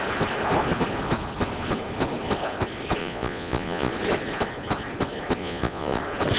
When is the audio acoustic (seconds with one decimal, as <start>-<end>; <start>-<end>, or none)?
0.0-3.0; 3.9-5.4; 6.0-6.4